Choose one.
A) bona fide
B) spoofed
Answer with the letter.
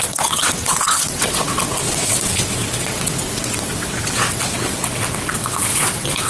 B